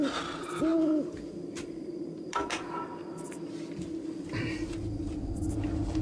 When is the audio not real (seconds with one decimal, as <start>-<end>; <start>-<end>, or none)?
0.7-2.9